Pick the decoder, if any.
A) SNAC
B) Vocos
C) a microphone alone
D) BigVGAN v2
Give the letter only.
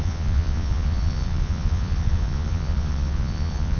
B